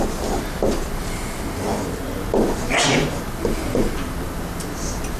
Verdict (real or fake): real